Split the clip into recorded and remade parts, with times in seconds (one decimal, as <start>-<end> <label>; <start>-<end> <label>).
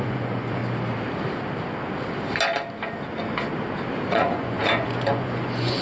0.0-0.6 remade; 0.6-4.1 recorded; 4.1-5.8 remade